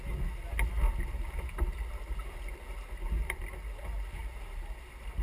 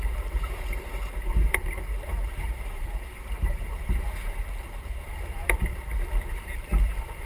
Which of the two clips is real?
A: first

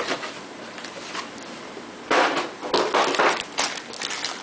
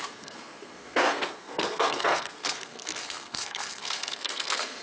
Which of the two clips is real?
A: first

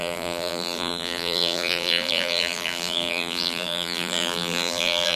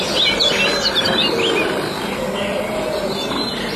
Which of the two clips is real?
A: second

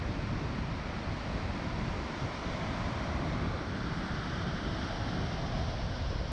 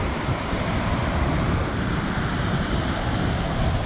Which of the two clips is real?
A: first